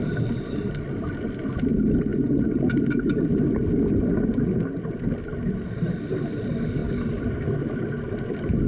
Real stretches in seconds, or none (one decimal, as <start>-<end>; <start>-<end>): 0.0-8.7